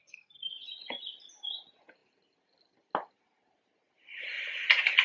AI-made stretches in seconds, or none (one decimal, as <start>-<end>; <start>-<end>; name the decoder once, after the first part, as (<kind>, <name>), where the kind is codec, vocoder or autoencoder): 0.0-0.5 (codec, SNAC)